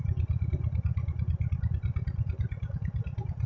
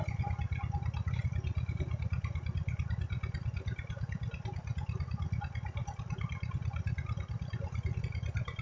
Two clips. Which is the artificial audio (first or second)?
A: first